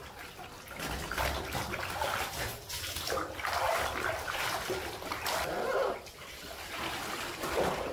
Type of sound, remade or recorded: recorded